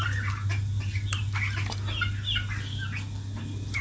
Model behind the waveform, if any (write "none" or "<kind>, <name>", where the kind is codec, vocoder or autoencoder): none